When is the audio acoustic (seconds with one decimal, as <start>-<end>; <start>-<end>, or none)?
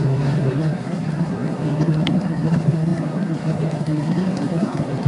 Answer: none